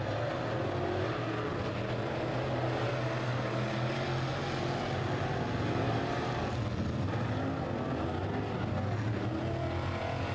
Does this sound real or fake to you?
real